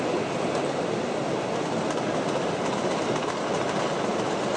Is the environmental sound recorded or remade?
recorded